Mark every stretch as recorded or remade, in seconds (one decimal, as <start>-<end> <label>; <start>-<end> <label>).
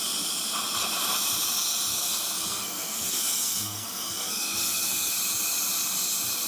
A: 0.0-1.9 recorded; 1.9-5.1 remade; 5.1-6.5 recorded